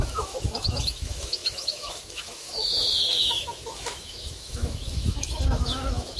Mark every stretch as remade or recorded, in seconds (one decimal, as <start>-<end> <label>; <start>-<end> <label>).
0.0-6.2 remade